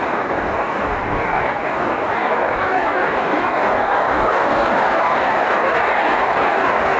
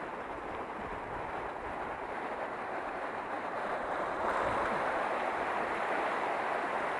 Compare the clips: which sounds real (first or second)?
second